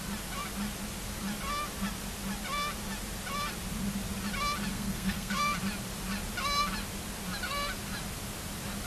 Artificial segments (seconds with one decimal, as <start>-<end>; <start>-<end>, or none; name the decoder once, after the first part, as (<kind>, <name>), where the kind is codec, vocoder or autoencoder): 4.7-5.4 (codec, SNAC)